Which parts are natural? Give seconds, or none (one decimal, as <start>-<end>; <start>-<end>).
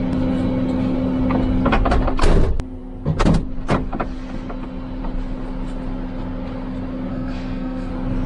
0.0-7.1; 7.9-8.3